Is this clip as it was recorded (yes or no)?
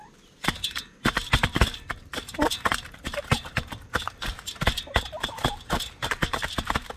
no